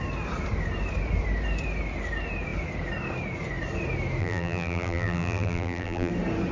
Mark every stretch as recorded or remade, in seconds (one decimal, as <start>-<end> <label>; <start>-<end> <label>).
0.0-4.2 recorded; 4.2-6.1 remade; 6.1-6.5 recorded